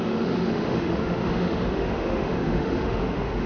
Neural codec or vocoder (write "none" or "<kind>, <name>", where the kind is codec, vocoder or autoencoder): autoencoder, DAC-VAE